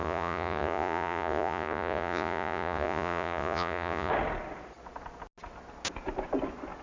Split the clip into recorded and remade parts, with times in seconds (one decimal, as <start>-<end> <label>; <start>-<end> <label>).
0.0-4.1 remade; 4.1-6.8 recorded